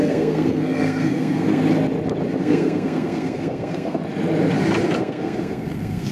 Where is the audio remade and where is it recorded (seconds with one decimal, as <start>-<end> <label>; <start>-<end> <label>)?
0.0-1.6 remade; 1.6-2.4 recorded; 2.4-4.0 remade; 4.0-5.0 recorded; 5.0-6.1 remade